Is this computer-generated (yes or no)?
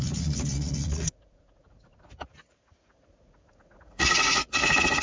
yes